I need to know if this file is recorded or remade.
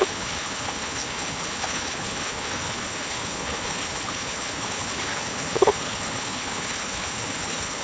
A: remade